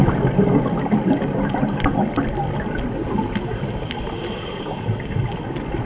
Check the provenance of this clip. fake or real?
real